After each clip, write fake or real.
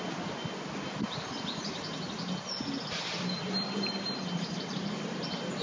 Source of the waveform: real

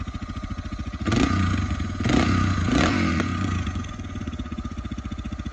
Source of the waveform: fake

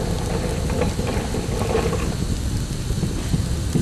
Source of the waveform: real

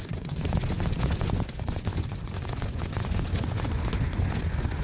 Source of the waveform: fake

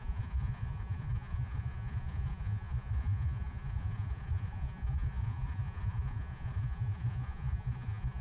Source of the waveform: fake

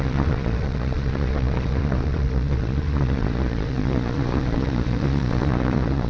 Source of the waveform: fake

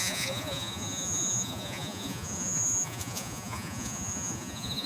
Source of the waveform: fake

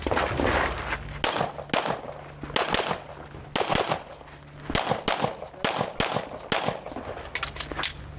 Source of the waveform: real